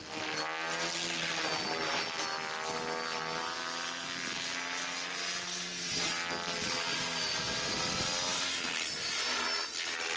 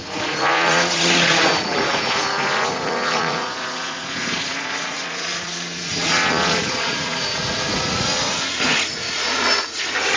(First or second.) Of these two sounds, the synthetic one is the second